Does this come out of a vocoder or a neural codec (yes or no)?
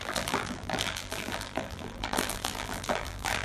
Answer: yes